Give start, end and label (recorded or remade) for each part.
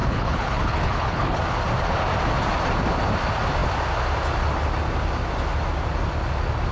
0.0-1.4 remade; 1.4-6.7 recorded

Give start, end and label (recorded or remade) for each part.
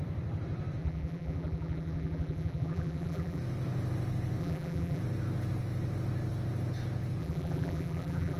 0.0-0.8 recorded; 0.8-3.4 remade; 3.4-4.4 recorded; 4.4-5.0 remade; 5.0-7.2 recorded; 7.2-8.4 remade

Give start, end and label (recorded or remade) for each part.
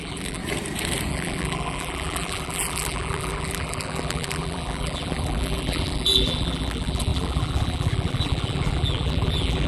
0.0-0.4 remade; 0.4-1.1 recorded; 1.1-9.7 remade